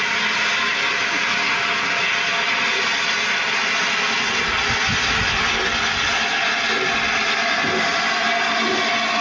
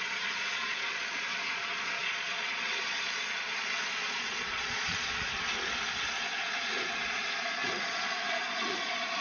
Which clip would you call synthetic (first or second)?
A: second